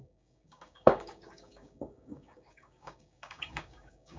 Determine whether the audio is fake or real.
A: fake